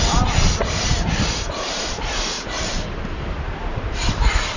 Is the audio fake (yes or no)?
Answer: yes